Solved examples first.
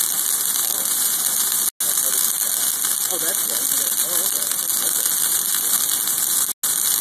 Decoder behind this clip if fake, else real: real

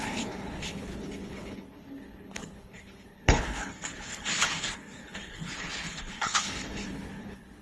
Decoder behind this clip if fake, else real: fake, codec, HILCodec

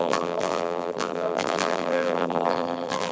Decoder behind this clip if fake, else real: fake, vocoder, BigVGAN v2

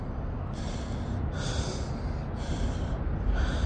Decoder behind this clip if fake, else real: real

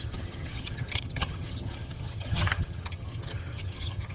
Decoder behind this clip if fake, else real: fake, vocoder, HiFi-GAN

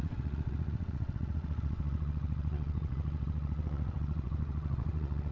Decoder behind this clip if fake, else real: fake, vocoder, WaveNeXt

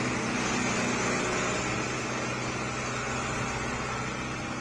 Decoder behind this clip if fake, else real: real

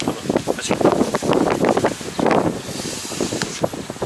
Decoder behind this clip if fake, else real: real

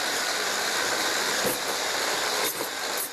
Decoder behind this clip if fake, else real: real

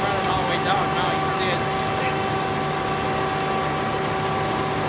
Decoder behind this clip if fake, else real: real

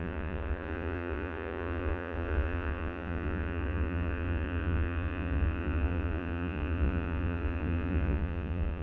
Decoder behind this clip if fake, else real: fake, vocoder, Vocos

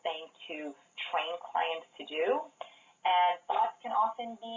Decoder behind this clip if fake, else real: real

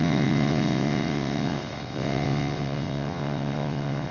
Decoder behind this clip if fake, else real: fake, vocoder, WaveNeXt